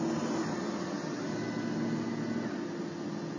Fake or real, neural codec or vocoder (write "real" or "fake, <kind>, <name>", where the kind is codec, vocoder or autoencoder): real